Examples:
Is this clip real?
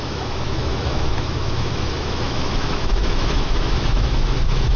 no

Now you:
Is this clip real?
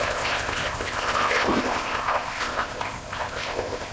no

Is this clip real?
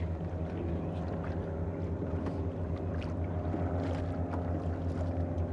yes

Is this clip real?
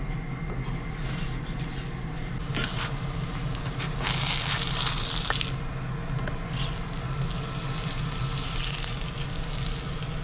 yes